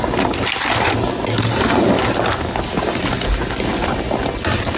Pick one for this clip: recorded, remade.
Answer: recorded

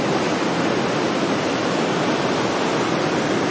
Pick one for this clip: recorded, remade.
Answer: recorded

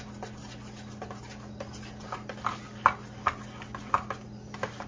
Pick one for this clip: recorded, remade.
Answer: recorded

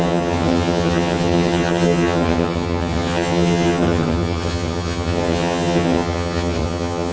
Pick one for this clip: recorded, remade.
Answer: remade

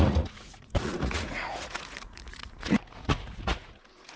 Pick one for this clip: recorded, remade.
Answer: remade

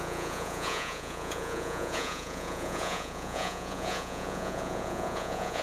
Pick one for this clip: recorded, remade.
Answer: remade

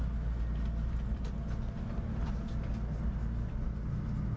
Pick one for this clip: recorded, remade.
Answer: recorded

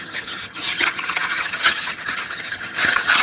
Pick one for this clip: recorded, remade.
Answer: remade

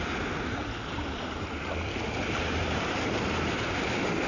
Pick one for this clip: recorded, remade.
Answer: recorded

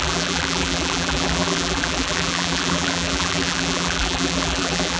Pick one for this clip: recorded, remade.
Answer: remade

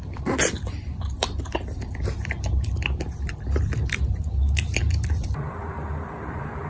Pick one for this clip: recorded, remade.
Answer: remade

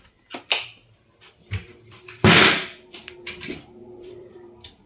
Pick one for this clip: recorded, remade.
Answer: remade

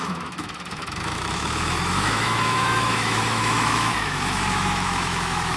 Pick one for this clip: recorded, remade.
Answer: remade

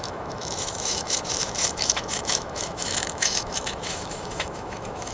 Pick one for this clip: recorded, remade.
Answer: remade